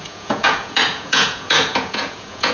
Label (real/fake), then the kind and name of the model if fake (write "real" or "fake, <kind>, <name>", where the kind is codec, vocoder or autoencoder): fake, vocoder, Vocos